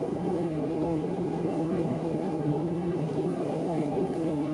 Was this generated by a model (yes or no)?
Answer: yes